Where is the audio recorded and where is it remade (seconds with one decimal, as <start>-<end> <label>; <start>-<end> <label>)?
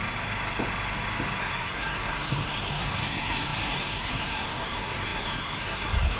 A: 0.0-1.4 recorded; 1.4-6.2 remade